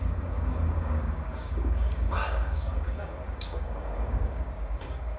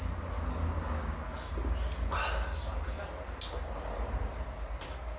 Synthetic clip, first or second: first